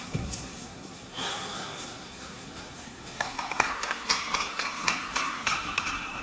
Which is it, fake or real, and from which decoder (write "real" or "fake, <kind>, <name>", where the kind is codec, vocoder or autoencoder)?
fake, codec, SNAC